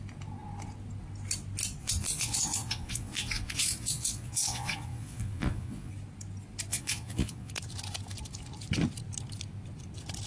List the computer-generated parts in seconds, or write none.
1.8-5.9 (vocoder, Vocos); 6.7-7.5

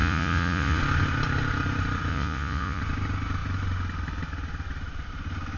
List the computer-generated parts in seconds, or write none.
0.0-0.8 (vocoder, Vocos); 2.1-2.8

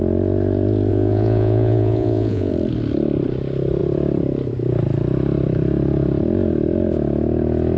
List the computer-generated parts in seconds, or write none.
0.9-2.5 (vocoder, Vocos)

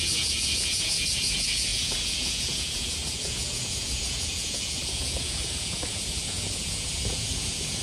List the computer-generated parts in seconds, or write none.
0.0-7.8 (vocoder, Vocos)

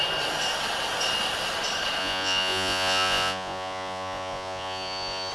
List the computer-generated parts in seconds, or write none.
2.0-5.3 (vocoder, Vocos)

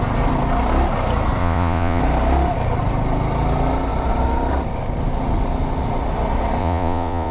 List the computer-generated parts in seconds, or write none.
1.4-2.0 (vocoder, Vocos); 6.6-7.3

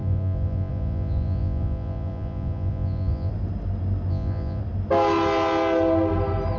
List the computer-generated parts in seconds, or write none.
0.0-3.3 (vocoder, Vocos); 4.1-4.6